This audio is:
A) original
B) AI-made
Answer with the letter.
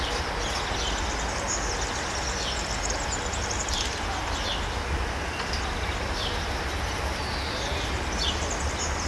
A